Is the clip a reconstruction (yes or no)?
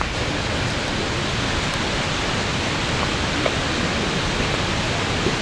no